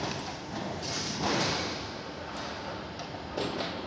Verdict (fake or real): real